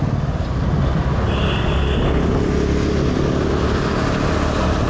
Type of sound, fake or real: real